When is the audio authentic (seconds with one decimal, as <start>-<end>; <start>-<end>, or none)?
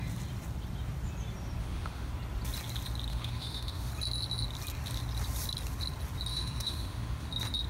0.0-1.6; 2.1-3.1; 3.9-6.3; 7.3-7.7